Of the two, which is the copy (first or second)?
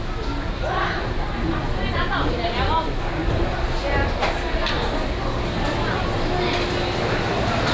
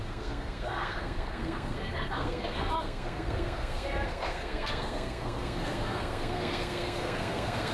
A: second